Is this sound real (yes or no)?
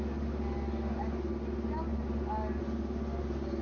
yes